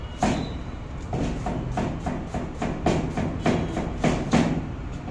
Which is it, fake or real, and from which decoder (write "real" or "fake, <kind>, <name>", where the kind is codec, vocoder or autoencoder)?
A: real